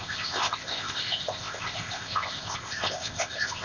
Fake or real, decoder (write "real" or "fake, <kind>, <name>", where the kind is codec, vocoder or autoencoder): fake, codec, ZipCodec